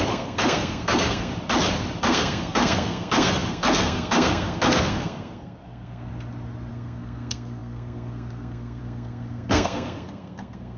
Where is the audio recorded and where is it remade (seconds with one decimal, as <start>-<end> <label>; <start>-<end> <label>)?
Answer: 0.0-1.3 remade; 1.3-2.0 recorded; 2.0-6.1 remade; 6.1-6.7 recorded; 6.7-10.8 remade